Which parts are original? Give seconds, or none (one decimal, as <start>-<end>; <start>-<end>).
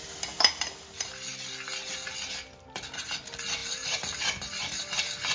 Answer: 0.0-5.3